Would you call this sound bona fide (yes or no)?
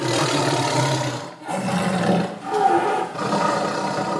yes